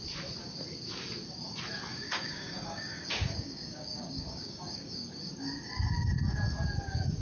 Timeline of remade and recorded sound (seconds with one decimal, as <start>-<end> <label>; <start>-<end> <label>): 0.0-1.9 recorded; 1.9-5.3 remade; 5.3-7.2 recorded